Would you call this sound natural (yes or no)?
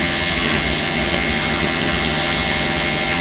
no